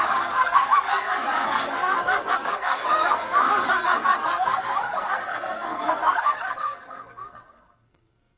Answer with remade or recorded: remade